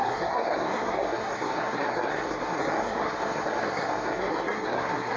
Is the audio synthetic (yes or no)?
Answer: yes